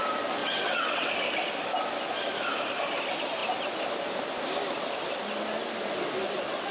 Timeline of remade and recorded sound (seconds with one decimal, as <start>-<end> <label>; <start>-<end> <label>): 0.0-0.4 recorded; 0.4-1.1 remade; 1.1-6.7 recorded